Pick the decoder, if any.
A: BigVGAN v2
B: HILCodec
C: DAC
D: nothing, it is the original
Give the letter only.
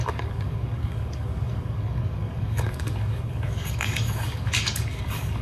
C